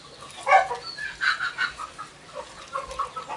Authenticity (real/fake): real